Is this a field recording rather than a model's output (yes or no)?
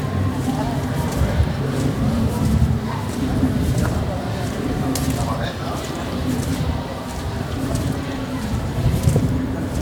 no